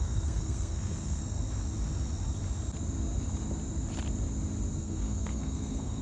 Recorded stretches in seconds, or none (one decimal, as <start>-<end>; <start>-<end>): 1.2-4.8

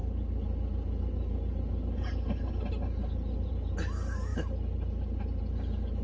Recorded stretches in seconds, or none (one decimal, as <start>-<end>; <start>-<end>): 0.0-6.0